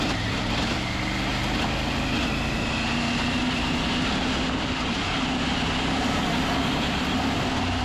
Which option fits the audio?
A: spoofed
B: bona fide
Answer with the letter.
B